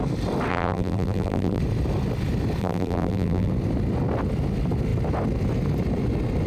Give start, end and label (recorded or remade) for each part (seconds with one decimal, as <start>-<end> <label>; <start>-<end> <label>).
0.0-0.5 recorded; 0.5-1.6 remade; 1.6-2.6 recorded; 2.6-3.5 remade; 3.5-6.5 recorded